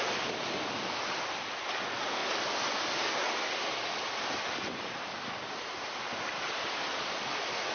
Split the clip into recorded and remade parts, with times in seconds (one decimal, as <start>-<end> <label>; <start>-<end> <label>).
0.0-7.7 recorded